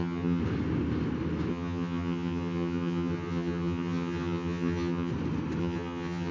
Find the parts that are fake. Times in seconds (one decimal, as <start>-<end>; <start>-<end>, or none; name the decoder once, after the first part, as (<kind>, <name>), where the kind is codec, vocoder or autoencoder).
0.0-0.4 (vocoder, HiFi-GAN); 1.5-5.1; 5.6-6.3